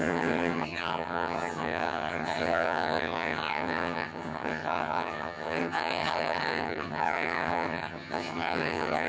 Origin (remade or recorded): remade